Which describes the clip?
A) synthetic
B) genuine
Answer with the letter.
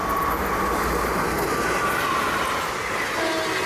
B